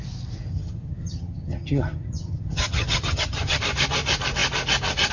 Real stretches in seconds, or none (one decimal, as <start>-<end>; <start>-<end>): 0.0-0.5; 3.6-5.1